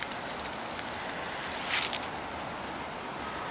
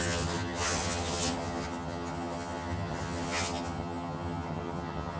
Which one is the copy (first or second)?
second